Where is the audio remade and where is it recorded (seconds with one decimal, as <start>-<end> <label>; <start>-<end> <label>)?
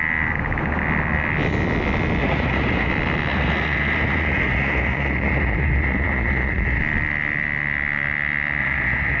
0.0-2.2 recorded; 2.2-2.9 remade; 2.9-3.3 recorded; 3.3-6.8 remade; 6.8-8.6 recorded; 8.6-9.2 remade